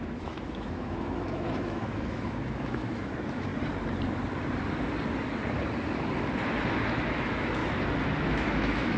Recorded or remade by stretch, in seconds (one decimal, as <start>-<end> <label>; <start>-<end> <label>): 0.0-3.5 remade; 3.5-7.0 recorded; 7.0-7.6 remade; 7.6-8.2 recorded; 8.2-9.0 remade